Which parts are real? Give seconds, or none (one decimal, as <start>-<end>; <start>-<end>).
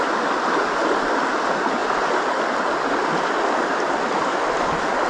0.0-5.1